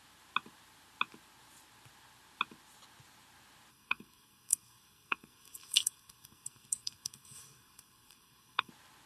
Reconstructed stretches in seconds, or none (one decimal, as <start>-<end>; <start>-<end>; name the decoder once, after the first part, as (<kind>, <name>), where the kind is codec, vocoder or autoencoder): 3.7-8.7 (codec, SNAC)